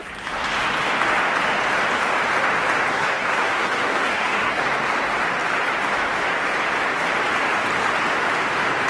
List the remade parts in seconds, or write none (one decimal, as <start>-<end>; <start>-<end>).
2.9-4.6